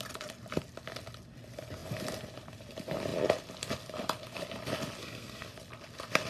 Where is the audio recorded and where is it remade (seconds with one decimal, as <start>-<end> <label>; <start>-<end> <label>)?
0.0-5.0 recorded; 5.0-5.5 remade; 5.5-6.3 recorded